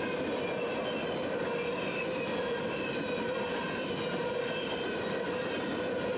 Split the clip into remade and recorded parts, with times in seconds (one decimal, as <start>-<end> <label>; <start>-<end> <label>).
0.0-6.2 recorded